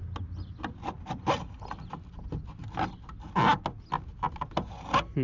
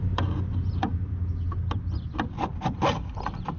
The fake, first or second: second